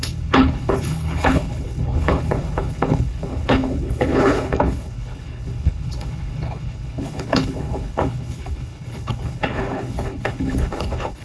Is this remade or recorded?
remade